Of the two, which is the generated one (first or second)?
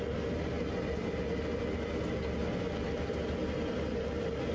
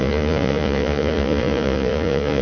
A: second